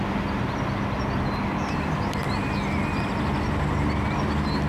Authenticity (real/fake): real